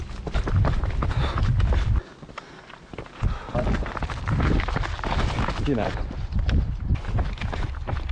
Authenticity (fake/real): real